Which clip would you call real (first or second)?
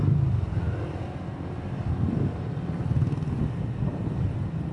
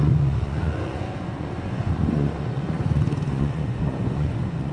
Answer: first